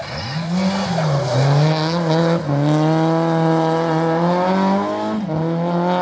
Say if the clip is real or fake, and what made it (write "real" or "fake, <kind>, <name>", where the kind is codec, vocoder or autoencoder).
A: real